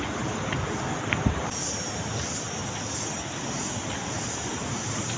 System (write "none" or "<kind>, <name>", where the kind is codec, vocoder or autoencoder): none